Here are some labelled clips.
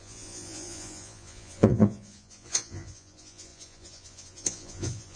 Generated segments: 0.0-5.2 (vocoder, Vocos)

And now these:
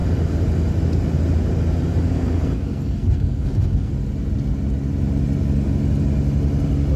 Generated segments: 2.1-3.9 (codec, SNAC)

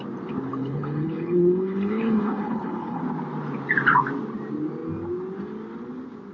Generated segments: 0.5-3.0 (codec, HILCodec)